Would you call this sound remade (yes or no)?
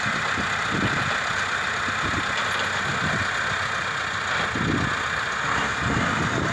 no